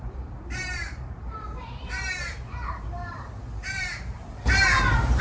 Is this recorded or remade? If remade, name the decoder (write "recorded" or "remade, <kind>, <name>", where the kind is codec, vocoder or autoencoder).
remade, vocoder, BigVGAN v2